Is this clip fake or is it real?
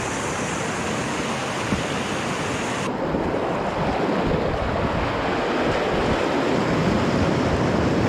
real